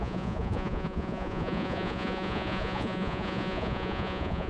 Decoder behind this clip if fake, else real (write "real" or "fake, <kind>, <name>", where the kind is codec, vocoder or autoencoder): fake, vocoder, Vocos